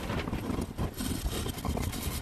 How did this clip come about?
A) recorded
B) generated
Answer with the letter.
A